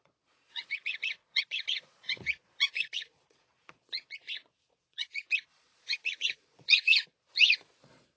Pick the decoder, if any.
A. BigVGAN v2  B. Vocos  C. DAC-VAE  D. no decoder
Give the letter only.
B